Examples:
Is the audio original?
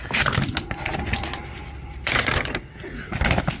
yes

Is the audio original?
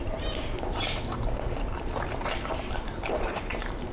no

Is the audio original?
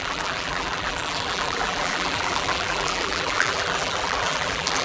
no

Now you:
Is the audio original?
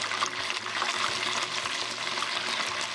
yes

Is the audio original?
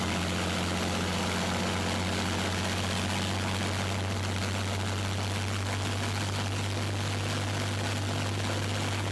yes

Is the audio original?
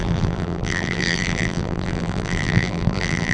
no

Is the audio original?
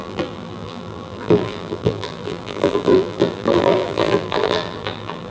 no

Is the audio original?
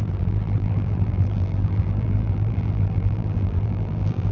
no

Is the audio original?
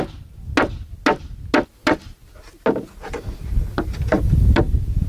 yes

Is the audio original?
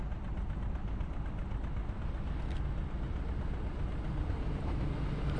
yes